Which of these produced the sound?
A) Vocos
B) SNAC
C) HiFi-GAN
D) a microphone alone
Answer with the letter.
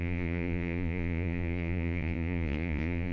A